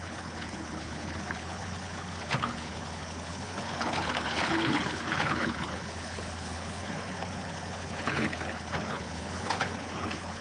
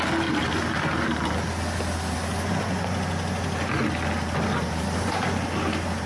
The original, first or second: second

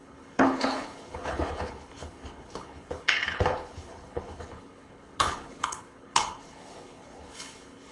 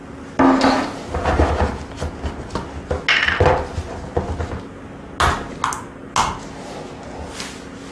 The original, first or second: second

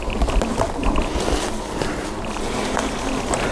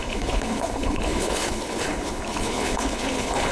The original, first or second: first